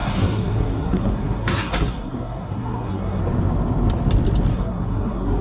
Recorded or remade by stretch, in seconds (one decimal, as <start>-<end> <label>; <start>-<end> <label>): 0.0-3.2 remade; 3.2-4.5 recorded; 4.5-5.4 remade